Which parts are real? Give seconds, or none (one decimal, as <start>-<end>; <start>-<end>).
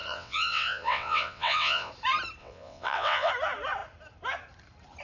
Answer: 1.9-2.4; 3.3-5.0